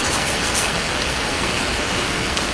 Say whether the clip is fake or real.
fake